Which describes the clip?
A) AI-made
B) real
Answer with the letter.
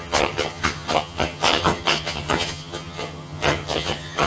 A